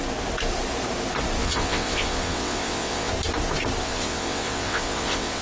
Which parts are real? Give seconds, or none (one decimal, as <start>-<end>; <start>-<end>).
0.0-1.4; 3.1-3.8